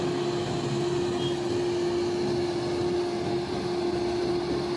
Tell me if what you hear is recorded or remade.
recorded